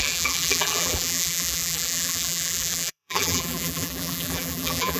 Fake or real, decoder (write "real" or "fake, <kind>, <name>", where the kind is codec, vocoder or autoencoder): fake, vocoder, BigVGAN v2